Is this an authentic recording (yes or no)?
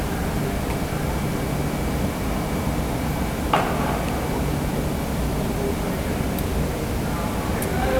yes